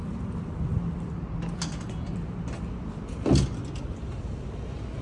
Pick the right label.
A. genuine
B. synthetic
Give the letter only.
A